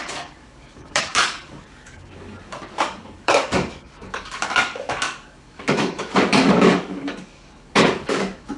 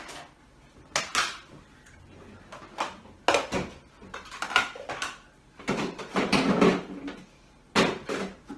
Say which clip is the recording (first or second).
second